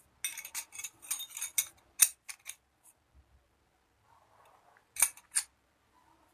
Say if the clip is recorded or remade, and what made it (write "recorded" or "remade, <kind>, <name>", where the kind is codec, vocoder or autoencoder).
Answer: recorded